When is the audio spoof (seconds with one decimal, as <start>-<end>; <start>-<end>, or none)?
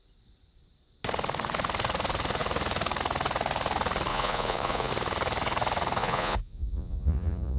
4.1-4.9; 6.0-7.6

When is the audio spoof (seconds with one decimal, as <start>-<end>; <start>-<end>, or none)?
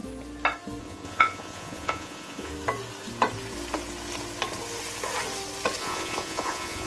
0.8-2.5; 5.8-6.9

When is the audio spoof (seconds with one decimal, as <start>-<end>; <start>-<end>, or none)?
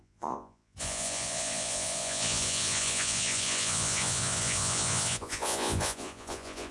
0.0-6.7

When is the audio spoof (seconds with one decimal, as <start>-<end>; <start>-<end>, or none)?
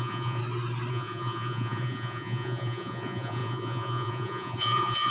0.0-0.4; 0.9-5.1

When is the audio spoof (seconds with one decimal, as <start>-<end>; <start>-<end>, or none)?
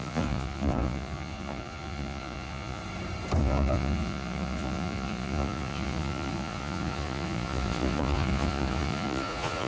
0.0-2.8; 3.4-9.7